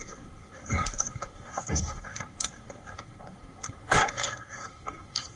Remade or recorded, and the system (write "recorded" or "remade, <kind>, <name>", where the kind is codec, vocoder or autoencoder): remade, codec, SNAC